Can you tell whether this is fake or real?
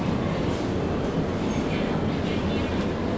real